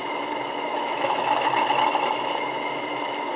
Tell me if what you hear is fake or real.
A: fake